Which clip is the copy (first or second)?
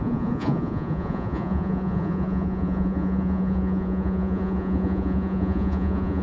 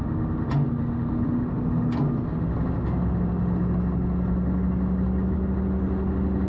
first